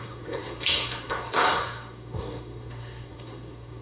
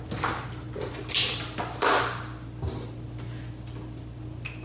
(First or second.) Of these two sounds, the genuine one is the second